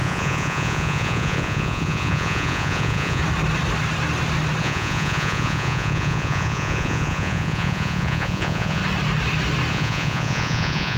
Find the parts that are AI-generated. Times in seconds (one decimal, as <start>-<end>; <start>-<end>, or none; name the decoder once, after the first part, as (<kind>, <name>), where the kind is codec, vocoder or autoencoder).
0.0-3.2 (vocoder, Vocos); 4.6-8.8; 9.7-11.0